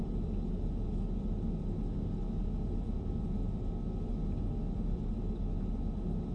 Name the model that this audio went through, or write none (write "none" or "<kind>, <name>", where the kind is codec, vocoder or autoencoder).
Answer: none